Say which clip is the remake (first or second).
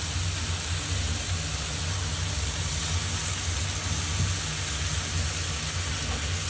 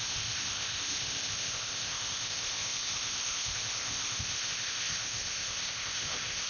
second